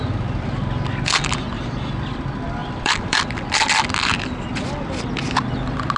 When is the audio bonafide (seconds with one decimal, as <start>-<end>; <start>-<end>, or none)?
0.0-2.6; 3.2-6.0

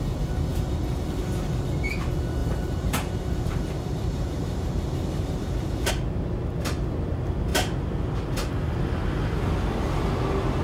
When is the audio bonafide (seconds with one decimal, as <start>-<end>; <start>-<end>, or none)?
0.0-2.4; 5.9-10.6

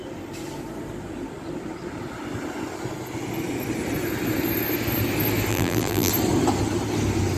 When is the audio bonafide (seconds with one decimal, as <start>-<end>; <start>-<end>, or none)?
0.0-5.5; 6.1-7.4

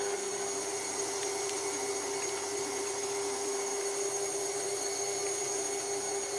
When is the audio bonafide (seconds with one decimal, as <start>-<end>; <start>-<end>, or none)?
0.0-3.7; 5.4-6.4

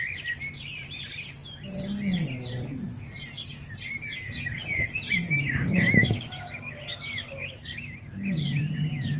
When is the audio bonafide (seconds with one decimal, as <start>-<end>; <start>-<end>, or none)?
1.4-2.5

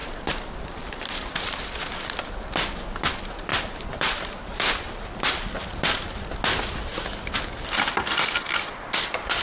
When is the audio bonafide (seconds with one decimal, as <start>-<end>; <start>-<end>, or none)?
1.8-3.5; 5.5-9.4